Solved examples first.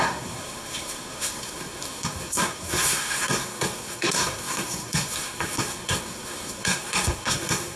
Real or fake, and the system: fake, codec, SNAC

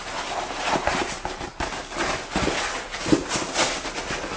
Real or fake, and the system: real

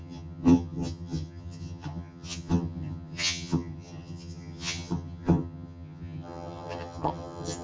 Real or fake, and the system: fake, vocoder, HiFi-GAN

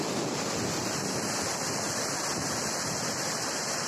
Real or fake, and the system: fake, vocoder, BigVGAN v2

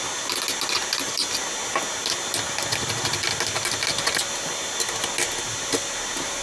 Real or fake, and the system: real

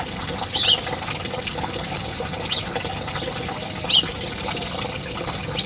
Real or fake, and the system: real